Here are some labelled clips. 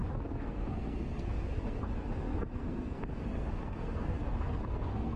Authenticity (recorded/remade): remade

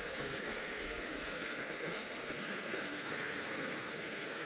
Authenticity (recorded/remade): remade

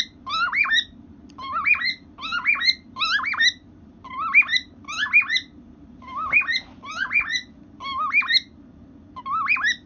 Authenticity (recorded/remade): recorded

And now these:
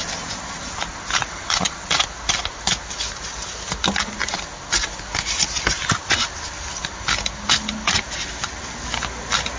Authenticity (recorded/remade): recorded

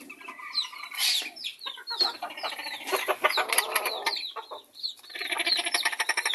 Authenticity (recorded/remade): recorded